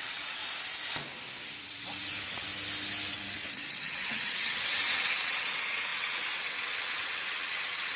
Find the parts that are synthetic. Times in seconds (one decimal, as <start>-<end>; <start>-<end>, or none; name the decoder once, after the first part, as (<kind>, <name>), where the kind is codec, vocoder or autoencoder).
0.0-0.4 (vocoder, WaveNeXt); 1.6-2.5; 3.1-8.0